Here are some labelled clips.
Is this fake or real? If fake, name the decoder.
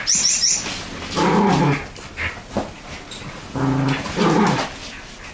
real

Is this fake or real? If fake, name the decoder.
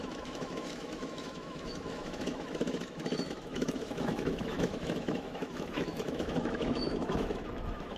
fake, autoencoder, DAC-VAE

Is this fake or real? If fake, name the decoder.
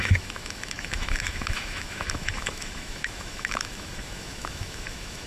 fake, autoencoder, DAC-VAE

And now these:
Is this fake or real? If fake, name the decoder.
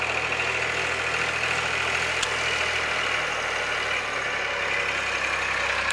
real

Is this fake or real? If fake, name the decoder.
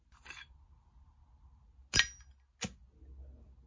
real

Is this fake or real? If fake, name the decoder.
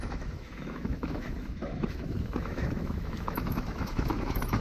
fake, autoencoder, DAC-VAE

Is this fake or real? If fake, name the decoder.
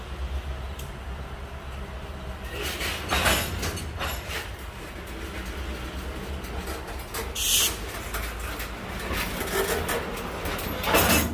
real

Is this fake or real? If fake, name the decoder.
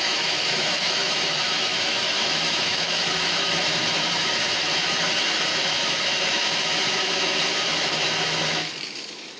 fake, autoencoder, DAC-VAE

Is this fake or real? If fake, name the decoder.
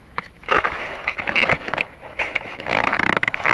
fake, autoencoder, DAC-VAE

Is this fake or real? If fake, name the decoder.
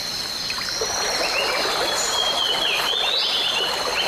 real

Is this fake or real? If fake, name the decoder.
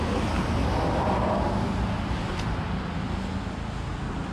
real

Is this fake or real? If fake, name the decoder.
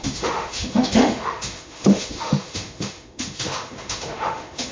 fake, autoencoder, DAC-VAE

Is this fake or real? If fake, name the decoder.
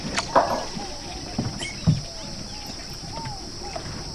real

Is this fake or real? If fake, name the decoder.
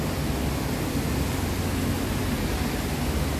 real